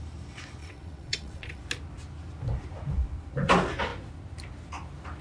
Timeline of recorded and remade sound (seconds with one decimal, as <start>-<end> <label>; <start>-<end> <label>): 0.0-0.6 recorded; 0.6-1.6 remade; 1.6-5.2 recorded

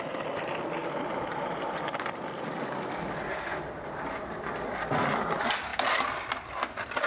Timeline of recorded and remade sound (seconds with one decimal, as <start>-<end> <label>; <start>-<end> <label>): 0.0-7.1 recorded

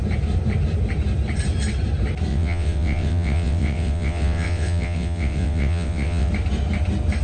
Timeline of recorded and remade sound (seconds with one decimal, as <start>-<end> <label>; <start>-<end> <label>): 0.0-2.3 recorded; 2.3-6.3 remade; 6.3-7.2 recorded

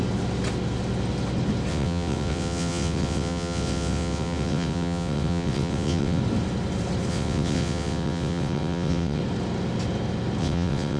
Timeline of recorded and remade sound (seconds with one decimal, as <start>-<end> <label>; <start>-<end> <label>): 0.0-1.7 recorded; 1.7-6.2 remade; 6.2-7.1 recorded; 7.1-9.2 remade; 9.2-10.4 recorded; 10.4-11.0 remade

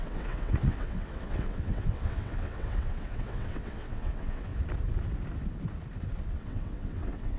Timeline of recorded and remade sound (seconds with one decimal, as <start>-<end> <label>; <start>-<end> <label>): 0.0-4.5 remade; 4.5-6.3 recorded; 6.3-7.4 remade

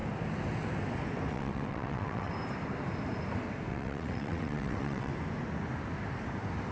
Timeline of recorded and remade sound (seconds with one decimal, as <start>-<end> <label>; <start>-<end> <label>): 0.0-1.3 recorded; 1.3-2.3 remade; 2.3-3.7 recorded; 3.7-5.1 remade; 5.1-6.7 recorded

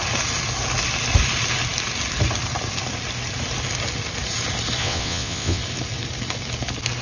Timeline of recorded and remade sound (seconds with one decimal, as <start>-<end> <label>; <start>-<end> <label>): 0.0-4.8 recorded; 4.8-5.6 remade; 5.6-7.0 recorded